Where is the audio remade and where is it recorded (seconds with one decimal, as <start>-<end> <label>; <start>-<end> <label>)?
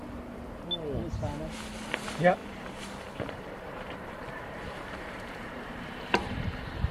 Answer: 0.0-2.4 recorded; 2.4-6.4 remade; 6.4-6.9 recorded